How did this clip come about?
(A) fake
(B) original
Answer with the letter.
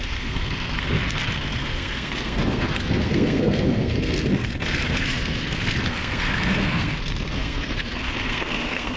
A